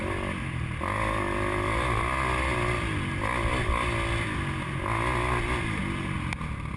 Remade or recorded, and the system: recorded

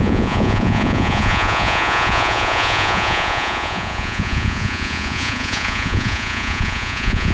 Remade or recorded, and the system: remade, vocoder, Vocos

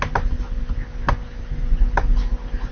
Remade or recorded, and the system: recorded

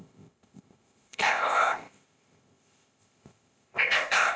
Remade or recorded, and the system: remade, codec, ZipCodec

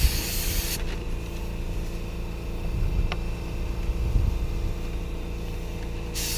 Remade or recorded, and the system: recorded